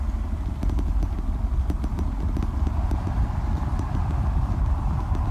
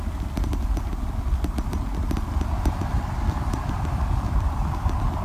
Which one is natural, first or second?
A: first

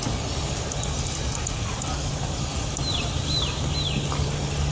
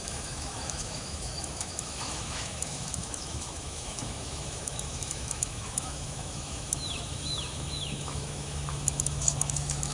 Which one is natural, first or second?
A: first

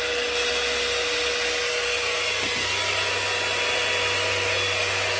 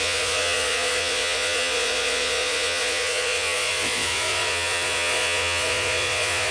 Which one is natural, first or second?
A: first